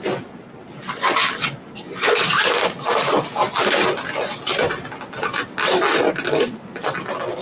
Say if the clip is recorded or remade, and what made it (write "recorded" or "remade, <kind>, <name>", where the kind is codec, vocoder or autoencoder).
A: recorded